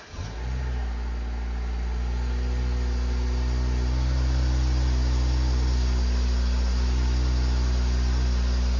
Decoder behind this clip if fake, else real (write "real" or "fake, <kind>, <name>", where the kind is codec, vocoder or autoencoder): real